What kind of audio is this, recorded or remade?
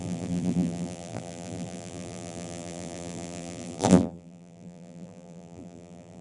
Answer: remade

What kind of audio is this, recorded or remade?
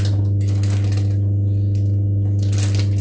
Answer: recorded